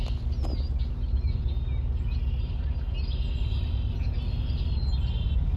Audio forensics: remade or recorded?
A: recorded